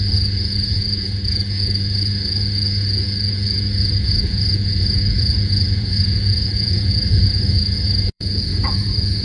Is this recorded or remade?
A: remade